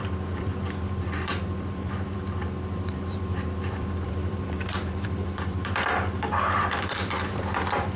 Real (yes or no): no